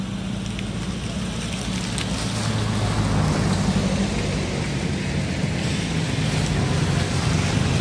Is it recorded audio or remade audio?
recorded